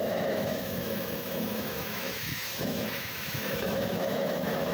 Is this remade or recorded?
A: remade